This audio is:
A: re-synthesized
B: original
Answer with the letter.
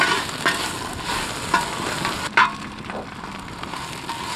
B